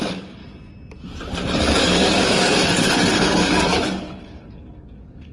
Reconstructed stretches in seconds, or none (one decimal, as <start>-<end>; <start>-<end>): 0.0-0.4; 1.6-5.3